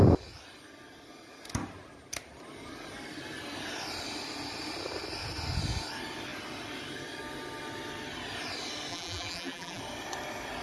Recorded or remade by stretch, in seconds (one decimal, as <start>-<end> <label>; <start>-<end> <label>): 0.0-8.9 recorded; 8.9-9.8 remade; 9.8-10.6 recorded